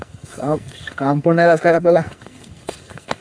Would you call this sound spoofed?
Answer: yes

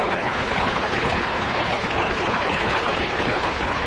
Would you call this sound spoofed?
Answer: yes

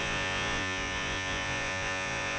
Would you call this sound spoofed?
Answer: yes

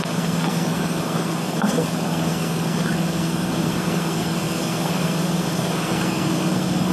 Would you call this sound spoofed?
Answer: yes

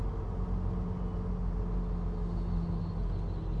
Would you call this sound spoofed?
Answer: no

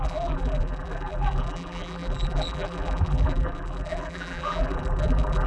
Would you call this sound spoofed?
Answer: yes